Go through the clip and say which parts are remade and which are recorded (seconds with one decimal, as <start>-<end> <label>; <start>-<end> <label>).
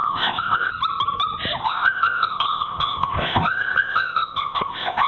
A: 0.0-0.7 remade; 0.7-1.6 recorded; 1.6-5.1 remade